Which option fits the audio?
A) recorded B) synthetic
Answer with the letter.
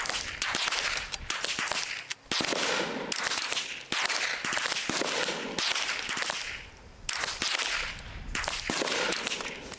A